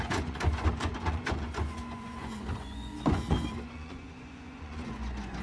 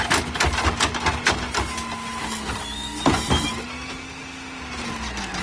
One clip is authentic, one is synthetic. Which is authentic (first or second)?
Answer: second